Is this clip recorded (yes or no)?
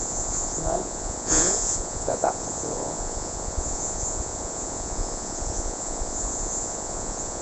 no